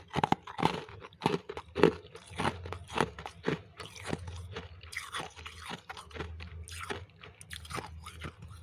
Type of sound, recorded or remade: recorded